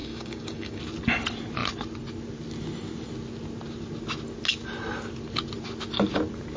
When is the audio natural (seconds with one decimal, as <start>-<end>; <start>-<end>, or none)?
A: 0.8-6.6